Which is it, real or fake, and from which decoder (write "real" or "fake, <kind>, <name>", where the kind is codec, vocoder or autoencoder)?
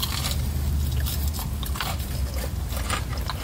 real